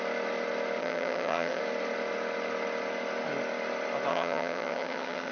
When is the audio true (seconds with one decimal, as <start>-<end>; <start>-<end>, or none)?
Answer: 0.0-0.8; 1.6-4.1